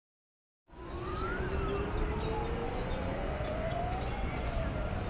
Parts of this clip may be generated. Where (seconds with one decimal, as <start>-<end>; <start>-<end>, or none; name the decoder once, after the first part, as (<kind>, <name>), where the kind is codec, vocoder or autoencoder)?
0.0-1.6 (vocoder, Vocos); 2.6-4.6

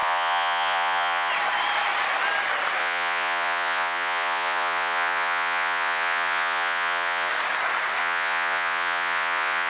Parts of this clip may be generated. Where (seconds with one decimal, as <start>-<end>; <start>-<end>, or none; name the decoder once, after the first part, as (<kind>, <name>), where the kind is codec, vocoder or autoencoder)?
0.0-1.3 (vocoder, Vocos); 2.8-7.3; 8.0-9.7

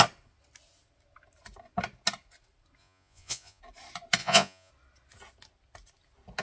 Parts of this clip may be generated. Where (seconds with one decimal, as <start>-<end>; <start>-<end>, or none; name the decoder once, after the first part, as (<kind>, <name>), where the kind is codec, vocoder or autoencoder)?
2.8-3.6 (vocoder, Vocos); 4.2-4.7

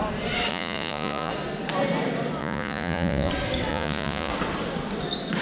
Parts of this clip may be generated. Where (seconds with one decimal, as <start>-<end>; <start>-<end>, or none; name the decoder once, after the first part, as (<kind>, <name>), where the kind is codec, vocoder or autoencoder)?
0.5-1.3 (vocoder, Vocos); 2.4-3.3; 3.7-4.3

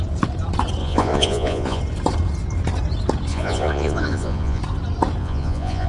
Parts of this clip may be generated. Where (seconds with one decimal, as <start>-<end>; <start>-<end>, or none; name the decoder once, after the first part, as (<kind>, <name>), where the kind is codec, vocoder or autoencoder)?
0.8-1.8 (vocoder, Vocos); 3.3-4.6; 5.2-5.9

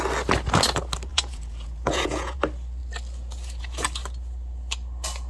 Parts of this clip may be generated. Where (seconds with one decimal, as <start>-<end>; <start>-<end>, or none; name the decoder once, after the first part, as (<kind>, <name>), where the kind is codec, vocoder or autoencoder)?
1.1-2.4 (vocoder, Vocos)

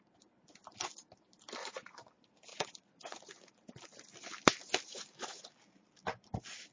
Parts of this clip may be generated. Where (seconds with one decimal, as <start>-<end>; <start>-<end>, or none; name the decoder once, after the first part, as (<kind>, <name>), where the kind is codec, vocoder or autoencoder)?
1.6-2.1 (vocoder, Vocos); 2.5-3.6; 4.9-5.4

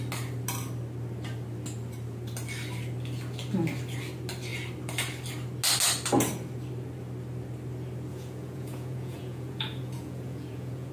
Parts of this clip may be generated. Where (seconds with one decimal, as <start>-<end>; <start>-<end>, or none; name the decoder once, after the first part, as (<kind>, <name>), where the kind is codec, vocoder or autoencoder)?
8.1-10.9 (vocoder, Vocos)